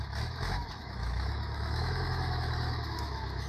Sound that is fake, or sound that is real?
fake